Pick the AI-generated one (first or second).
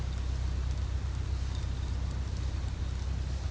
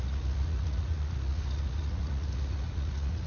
second